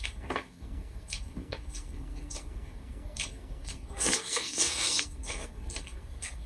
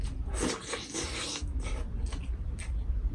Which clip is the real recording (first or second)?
second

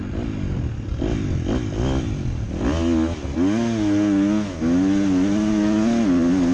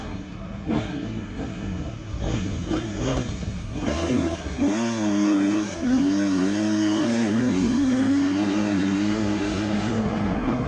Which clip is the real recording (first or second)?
first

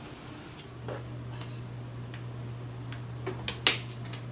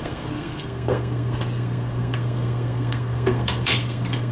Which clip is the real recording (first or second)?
first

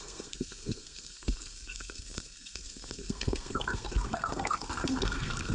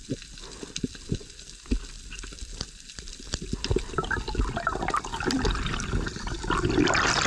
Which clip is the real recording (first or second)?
second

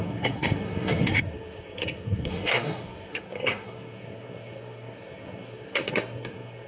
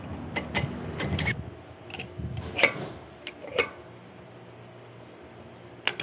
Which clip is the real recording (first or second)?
second